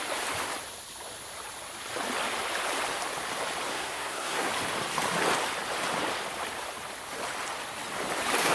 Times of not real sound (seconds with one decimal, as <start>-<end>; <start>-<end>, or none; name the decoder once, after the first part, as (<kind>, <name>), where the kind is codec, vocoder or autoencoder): 3.7-4.5 (codec, SNAC)